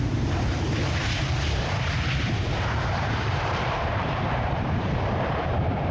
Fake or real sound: fake